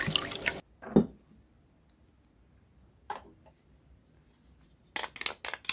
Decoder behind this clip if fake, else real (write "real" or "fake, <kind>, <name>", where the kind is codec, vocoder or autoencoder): real